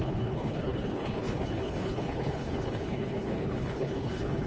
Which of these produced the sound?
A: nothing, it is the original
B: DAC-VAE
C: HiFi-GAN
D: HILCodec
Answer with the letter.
D